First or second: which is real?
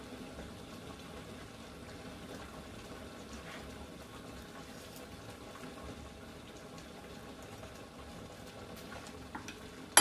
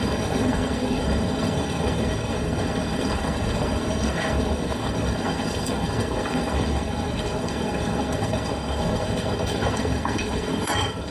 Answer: first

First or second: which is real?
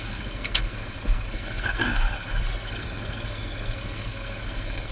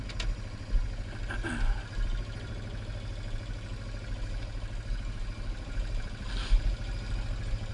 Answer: second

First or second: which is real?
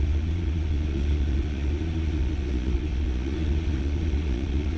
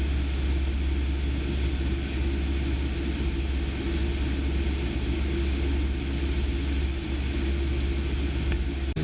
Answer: second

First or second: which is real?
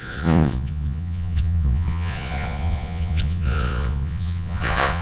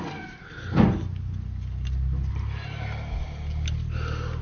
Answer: second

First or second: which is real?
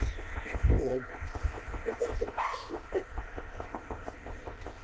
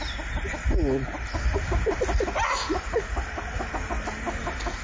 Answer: second